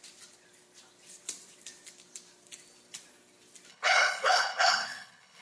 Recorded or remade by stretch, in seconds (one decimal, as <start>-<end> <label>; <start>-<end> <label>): 0.0-3.7 recorded; 3.7-5.4 remade